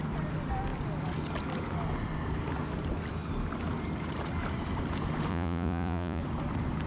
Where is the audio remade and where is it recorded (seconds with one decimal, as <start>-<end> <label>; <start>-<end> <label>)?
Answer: 0.0-5.3 recorded; 5.3-6.2 remade; 6.2-6.9 recorded

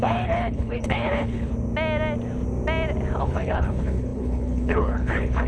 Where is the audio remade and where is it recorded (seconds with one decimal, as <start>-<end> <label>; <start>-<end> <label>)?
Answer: 0.0-1.5 remade; 1.5-3.2 recorded; 3.2-5.5 remade

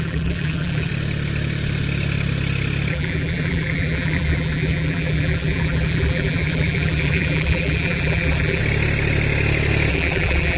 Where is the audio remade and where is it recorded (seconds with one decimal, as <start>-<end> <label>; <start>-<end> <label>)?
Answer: 0.0-0.9 remade; 0.9-2.9 recorded; 2.9-8.6 remade; 8.6-9.9 recorded; 9.9-10.6 remade

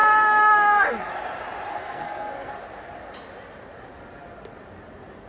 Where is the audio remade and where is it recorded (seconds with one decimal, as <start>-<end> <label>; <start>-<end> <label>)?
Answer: 0.0-1.1 remade; 1.1-1.7 recorded; 1.7-2.5 remade; 2.5-5.3 recorded

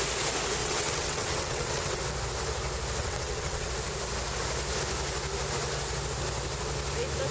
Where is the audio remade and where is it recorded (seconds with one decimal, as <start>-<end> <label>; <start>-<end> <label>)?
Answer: 0.0-0.6 recorded; 0.6-2.0 remade; 2.0-3.0 recorded; 3.0-3.7 remade; 3.7-7.3 recorded

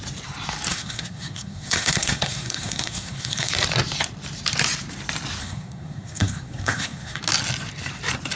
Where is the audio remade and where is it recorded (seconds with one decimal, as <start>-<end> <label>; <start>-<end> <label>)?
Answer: 0.0-0.7 recorded; 0.7-3.5 remade; 3.5-5.4 recorded; 5.4-7.2 remade; 7.2-8.4 recorded

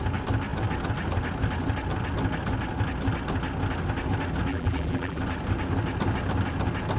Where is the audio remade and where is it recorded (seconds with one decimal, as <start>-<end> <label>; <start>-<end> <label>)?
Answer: 0.0-4.5 recorded; 4.5-5.2 remade; 5.2-7.0 recorded